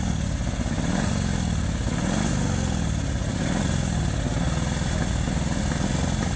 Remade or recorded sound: recorded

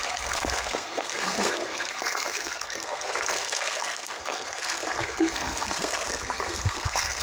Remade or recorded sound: remade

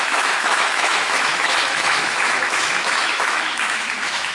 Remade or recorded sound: remade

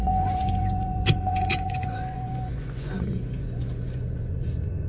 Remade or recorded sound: remade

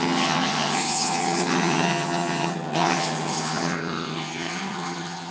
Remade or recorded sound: remade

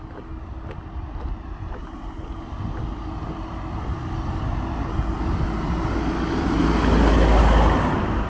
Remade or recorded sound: recorded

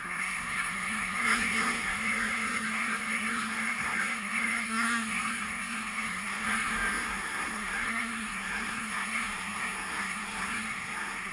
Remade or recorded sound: remade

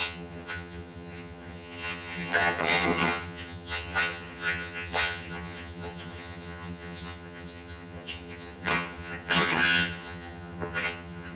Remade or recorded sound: remade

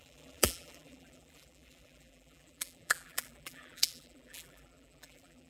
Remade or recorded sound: remade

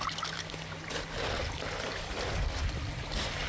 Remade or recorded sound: recorded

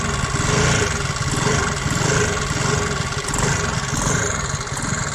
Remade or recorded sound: recorded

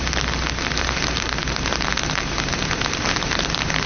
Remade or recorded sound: recorded